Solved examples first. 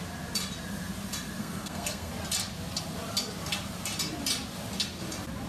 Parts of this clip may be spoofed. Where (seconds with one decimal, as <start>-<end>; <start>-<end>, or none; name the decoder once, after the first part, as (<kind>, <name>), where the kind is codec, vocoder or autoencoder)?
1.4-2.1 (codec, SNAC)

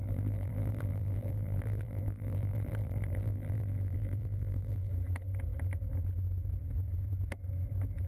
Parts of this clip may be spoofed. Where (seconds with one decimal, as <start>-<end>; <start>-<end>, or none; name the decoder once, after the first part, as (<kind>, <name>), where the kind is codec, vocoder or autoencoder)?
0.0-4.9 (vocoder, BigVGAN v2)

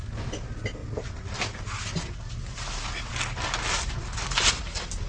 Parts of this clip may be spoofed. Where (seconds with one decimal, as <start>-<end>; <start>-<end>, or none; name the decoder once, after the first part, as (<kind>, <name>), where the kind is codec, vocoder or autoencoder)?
none